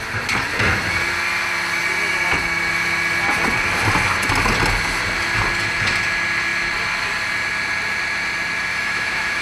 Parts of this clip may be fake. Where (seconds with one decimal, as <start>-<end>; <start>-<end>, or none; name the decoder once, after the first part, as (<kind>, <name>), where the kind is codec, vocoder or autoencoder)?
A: 8.7-9.4 (autoencoder, DAC-VAE)